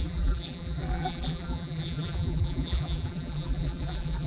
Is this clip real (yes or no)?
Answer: no